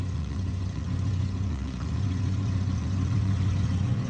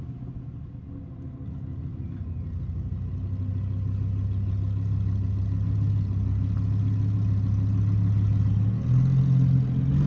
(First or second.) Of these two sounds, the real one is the second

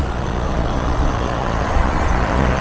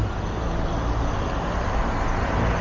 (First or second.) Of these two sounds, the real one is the second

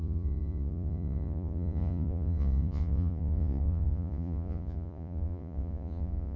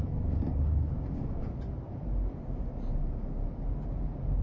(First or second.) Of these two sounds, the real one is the second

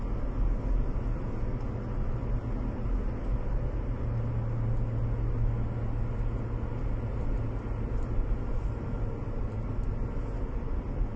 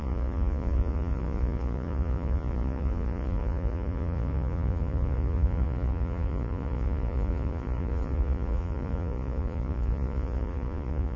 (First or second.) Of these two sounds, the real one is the first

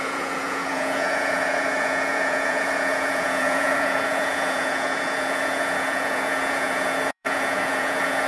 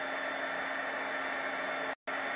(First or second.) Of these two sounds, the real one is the second